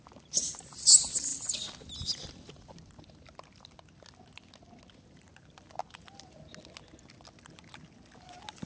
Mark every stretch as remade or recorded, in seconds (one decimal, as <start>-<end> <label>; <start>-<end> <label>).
0.0-8.7 recorded